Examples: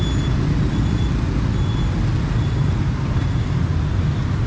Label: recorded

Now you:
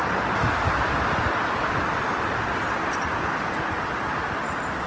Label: recorded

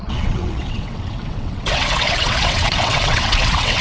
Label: remade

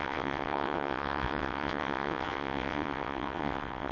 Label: remade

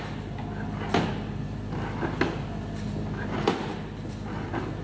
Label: recorded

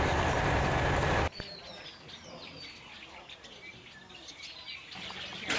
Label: recorded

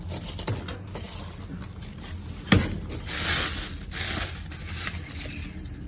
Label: recorded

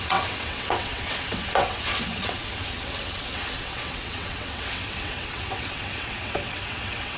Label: remade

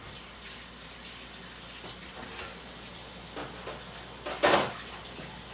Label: recorded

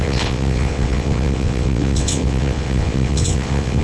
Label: remade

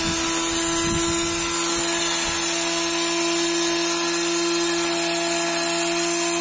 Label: recorded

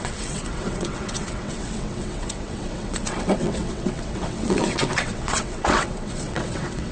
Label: remade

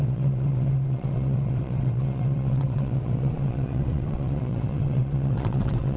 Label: remade